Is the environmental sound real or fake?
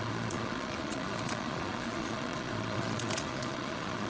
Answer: fake